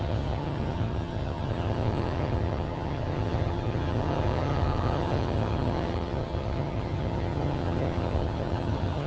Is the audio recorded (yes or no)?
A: no